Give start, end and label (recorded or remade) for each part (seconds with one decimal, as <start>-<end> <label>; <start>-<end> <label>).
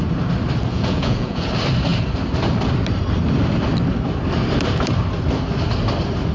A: 0.0-0.7 recorded; 0.7-1.5 remade; 1.5-6.3 recorded